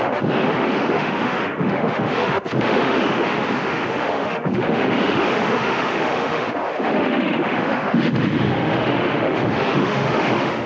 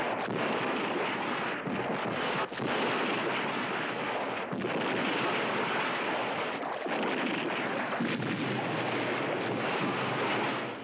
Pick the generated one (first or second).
first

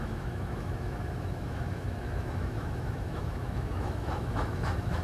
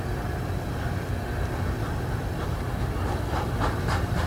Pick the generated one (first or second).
first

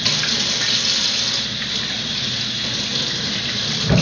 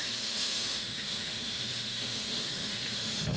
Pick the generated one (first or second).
second